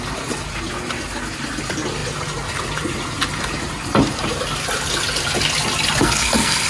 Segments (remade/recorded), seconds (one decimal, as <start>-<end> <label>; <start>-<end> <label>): 0.0-6.0 recorded; 6.0-6.7 remade

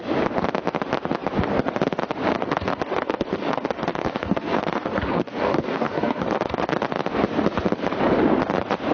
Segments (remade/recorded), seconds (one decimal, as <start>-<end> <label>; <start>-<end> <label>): 0.0-2.3 recorded; 2.3-6.7 remade; 6.7-8.9 recorded